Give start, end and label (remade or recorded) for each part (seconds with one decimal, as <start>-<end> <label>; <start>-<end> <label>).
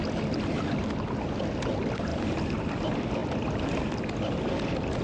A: 0.0-5.0 recorded